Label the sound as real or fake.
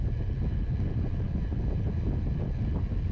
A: real